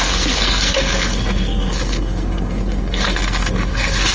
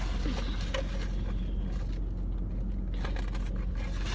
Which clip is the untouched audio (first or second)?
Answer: second